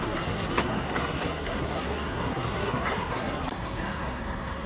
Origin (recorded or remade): remade